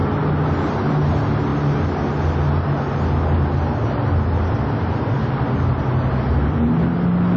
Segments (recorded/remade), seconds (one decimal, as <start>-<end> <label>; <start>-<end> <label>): 0.0-7.4 recorded